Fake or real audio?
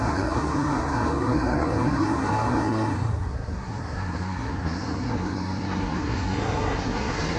fake